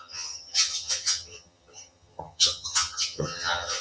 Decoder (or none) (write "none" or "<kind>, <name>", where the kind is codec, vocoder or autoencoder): vocoder, HiFi-GAN